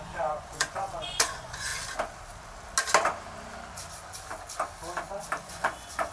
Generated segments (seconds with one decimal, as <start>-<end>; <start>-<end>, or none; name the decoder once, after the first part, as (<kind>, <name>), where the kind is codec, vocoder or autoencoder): 0.0-1.7 (vocoder, Vocos); 5.4-6.1